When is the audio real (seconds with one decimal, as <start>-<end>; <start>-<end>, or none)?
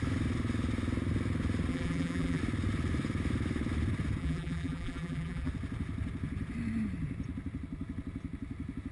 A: 0.0-1.7; 2.4-4.2; 5.5-8.9